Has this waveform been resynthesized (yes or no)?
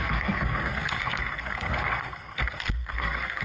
yes